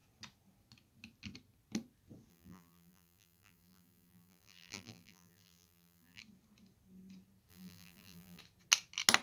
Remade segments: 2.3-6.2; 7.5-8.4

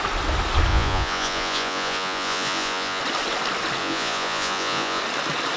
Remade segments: 0.7-3.0; 3.8-5.0

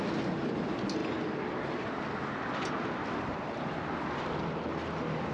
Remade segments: none

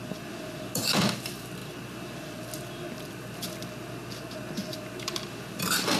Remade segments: 0.0-4.0; 4.7-6.0